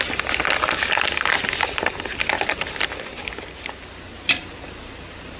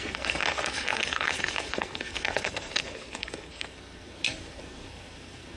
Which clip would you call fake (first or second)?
second